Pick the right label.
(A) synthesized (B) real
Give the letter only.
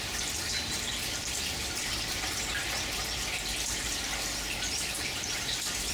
B